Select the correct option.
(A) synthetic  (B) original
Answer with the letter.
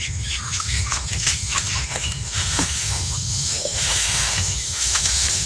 A